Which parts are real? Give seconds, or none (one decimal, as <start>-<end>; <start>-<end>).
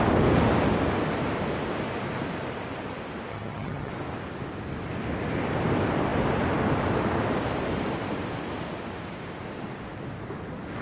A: 0.0-3.3; 3.9-10.8